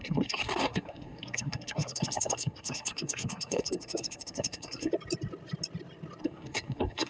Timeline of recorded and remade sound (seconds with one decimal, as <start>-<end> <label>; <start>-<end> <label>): 0.0-4.9 remade; 4.9-6.2 recorded; 6.2-7.1 remade